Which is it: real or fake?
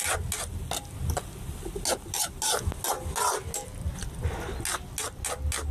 real